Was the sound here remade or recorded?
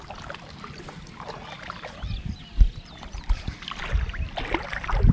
recorded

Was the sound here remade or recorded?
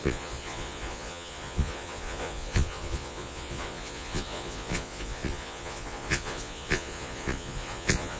remade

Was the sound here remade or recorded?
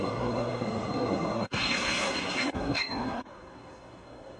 remade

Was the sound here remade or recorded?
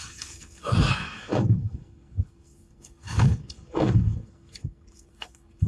remade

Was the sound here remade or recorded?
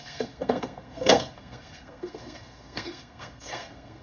remade